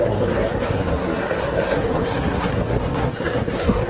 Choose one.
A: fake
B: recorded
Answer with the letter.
A